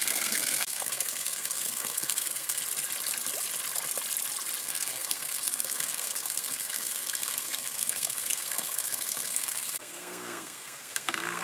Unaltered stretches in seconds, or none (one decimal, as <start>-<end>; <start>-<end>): 2.6-4.6